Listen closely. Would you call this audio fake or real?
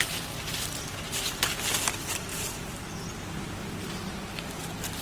real